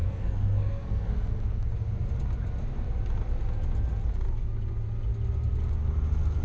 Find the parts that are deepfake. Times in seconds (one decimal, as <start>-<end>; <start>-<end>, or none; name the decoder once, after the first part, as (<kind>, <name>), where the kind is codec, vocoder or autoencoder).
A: 0.0-1.7 (codec, SNAC)